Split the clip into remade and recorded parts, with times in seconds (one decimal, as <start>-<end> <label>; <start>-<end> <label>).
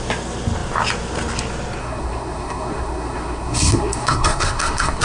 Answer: 0.0-1.8 recorded; 1.8-5.0 remade